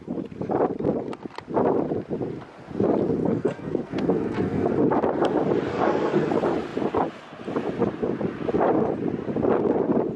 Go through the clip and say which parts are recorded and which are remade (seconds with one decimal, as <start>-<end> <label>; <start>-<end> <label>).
0.0-3.2 recorded; 3.2-4.7 remade; 4.7-5.7 recorded; 5.7-6.3 remade; 6.3-10.2 recorded